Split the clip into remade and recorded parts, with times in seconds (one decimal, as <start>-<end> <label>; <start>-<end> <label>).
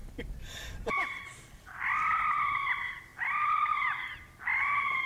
0.0-5.1 recorded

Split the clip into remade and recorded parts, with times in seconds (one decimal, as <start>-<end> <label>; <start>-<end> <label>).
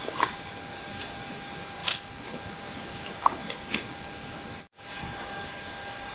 0.0-6.1 remade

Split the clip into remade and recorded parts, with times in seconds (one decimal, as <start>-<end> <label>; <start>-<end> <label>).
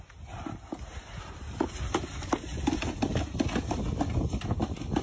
0.0-5.0 recorded